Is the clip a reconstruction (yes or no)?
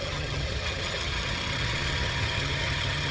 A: yes